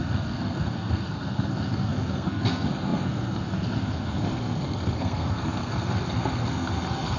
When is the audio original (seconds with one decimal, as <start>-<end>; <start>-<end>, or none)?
none